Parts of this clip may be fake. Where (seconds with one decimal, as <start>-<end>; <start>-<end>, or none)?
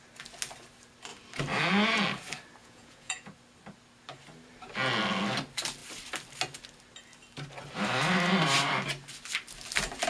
2.6-3.3